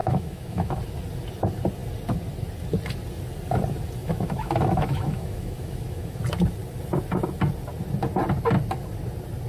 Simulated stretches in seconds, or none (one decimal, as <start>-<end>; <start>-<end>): 0.0-0.8; 4.0-6.2